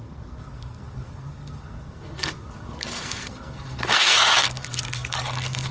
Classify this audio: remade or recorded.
remade